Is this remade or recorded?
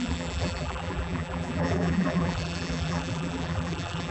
remade